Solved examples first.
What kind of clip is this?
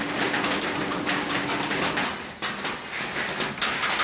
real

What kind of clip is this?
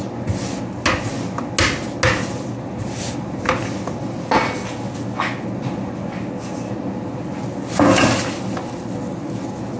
real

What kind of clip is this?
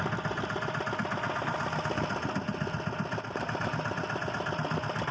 real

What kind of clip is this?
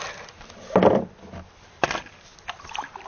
real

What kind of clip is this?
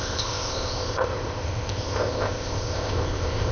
fake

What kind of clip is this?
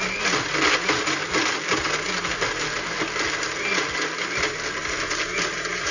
real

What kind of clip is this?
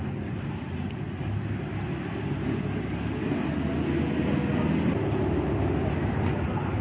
real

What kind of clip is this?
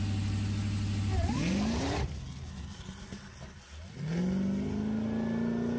real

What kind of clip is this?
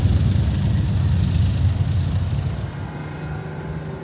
real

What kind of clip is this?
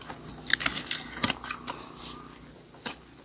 real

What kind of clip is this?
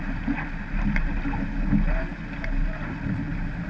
real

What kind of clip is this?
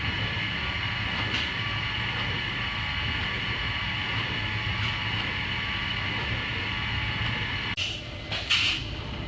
real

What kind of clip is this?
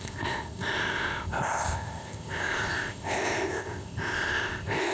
fake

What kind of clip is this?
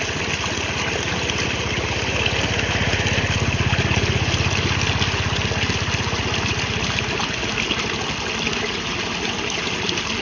real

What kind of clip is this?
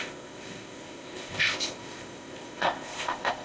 fake